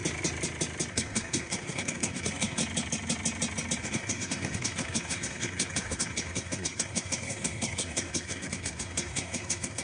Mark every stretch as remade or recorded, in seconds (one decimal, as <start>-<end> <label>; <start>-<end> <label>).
0.0-0.9 recorded; 0.9-2.6 remade; 2.6-3.8 recorded; 3.8-9.8 remade